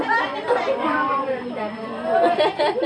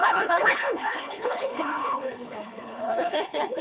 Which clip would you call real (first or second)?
first